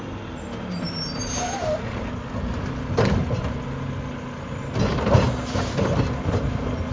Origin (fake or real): real